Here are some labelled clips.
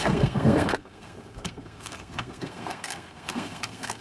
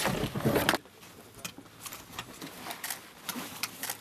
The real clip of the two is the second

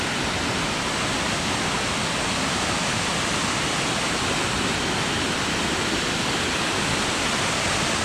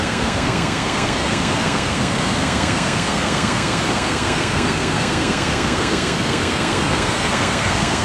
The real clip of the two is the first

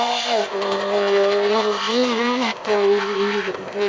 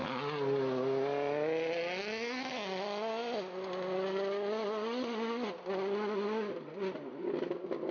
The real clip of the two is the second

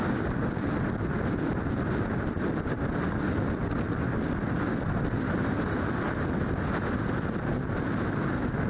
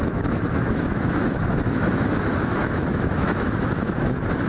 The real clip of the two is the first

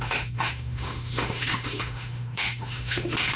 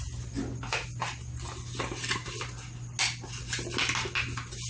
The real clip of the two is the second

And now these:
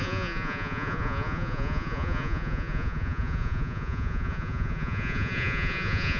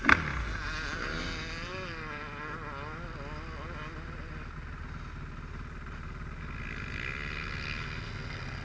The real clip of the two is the second